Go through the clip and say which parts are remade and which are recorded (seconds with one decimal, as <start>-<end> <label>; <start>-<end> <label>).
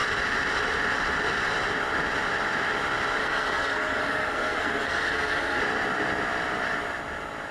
0.0-3.2 recorded; 3.2-5.6 remade; 5.6-7.5 recorded